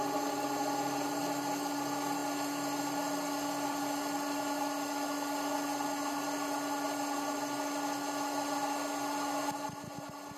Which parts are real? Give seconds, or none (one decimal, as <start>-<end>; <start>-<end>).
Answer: 0.0-10.4